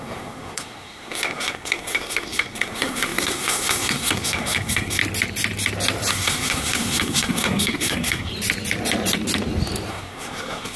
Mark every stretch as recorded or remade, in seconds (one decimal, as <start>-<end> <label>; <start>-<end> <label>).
0.0-5.0 remade; 5.0-6.1 recorded; 6.1-8.3 remade; 8.3-9.9 recorded; 9.9-10.8 remade